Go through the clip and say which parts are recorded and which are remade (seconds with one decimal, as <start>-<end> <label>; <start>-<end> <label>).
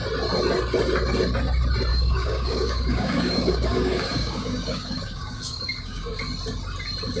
0.0-1.9 recorded; 1.9-6.2 remade; 6.2-7.2 recorded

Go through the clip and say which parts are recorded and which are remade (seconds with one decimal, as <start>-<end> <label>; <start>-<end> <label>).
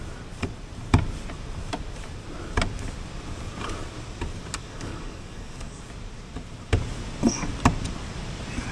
0.0-4.6 recorded; 4.6-5.8 remade; 5.8-8.7 recorded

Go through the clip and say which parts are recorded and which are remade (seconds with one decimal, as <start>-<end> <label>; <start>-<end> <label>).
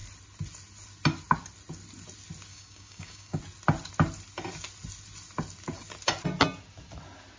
0.0-2.5 recorded; 2.5-3.4 remade; 3.4-7.4 recorded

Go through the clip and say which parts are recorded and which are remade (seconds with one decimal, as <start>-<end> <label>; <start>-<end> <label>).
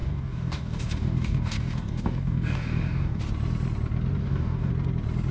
0.0-3.2 remade; 3.2-4.2 recorded; 4.2-4.7 remade; 4.7-5.3 recorded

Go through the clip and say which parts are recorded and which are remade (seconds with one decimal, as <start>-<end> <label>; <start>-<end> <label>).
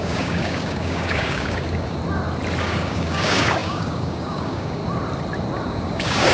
0.0-2.0 remade; 2.0-2.6 recorded; 2.6-4.8 remade; 4.8-5.7 recorded; 5.7-6.3 remade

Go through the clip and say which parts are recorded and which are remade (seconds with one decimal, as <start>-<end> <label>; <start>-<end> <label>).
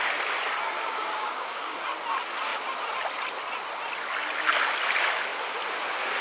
0.0-0.8 recorded; 0.8-1.8 remade; 1.8-6.2 recorded